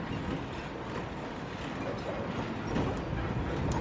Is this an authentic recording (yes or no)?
yes